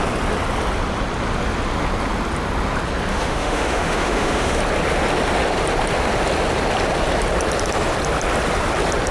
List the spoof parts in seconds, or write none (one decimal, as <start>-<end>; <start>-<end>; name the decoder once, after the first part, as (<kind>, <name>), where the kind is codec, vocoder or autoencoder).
3.1-4.6 (autoencoder, DAC-VAE)